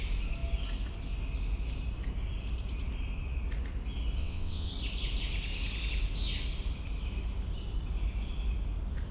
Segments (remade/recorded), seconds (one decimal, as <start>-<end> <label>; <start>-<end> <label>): 0.0-4.2 recorded; 4.2-4.7 remade; 4.7-9.1 recorded